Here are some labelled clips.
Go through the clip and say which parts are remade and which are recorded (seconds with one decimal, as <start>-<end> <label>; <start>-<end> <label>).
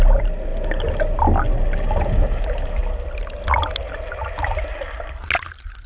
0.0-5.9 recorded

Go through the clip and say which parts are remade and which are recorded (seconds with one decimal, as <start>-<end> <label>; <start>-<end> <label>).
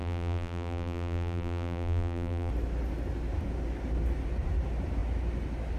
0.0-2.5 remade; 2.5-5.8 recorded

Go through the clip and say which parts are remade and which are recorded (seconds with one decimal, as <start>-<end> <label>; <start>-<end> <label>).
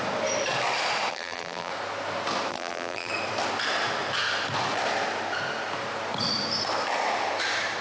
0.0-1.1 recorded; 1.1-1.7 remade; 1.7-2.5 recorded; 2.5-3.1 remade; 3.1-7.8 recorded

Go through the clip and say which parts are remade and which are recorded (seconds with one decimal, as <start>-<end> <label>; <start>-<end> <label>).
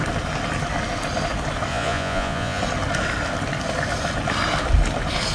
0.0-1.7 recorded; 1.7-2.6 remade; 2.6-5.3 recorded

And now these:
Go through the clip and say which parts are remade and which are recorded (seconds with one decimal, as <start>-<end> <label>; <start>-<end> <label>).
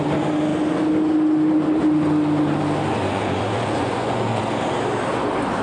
0.0-2.9 recorded; 2.9-4.4 remade; 4.4-5.6 recorded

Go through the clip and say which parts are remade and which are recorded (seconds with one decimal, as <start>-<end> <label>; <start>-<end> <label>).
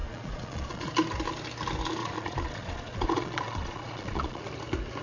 0.0-0.9 remade; 0.9-2.0 recorded; 2.0-4.5 remade; 4.5-5.0 recorded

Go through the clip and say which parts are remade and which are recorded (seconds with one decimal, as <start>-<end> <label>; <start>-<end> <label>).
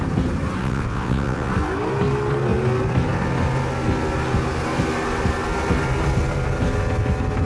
0.0-0.6 recorded; 0.6-1.5 remade; 1.5-7.5 recorded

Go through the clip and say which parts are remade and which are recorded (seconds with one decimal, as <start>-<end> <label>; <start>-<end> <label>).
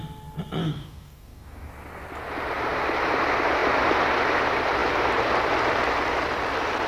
0.0-0.6 recorded; 0.6-1.7 remade; 1.7-6.9 recorded